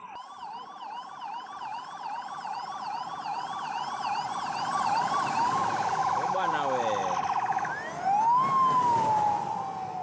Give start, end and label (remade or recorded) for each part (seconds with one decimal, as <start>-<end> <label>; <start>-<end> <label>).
0.0-6.0 recorded; 6.0-6.5 remade; 6.5-10.0 recorded